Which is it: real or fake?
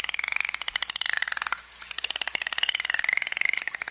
real